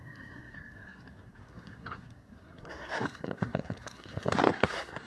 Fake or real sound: fake